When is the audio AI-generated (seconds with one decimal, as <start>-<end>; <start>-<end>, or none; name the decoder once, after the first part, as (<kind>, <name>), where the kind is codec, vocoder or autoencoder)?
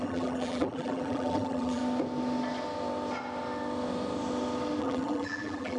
0.0-1.8 (vocoder, BigVGAN v2); 4.8-5.8